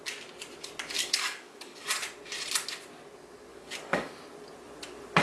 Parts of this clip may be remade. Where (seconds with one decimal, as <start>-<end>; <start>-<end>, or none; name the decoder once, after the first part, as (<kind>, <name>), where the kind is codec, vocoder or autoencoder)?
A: 1.0-1.9 (codec, DAC); 3.5-4.1